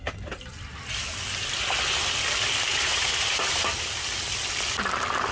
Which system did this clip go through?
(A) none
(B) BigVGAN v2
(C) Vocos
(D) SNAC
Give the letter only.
A